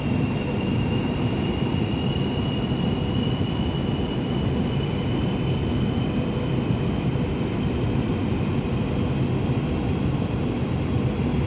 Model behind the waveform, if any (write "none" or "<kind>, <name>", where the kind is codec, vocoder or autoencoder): none